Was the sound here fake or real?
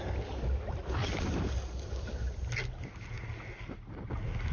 real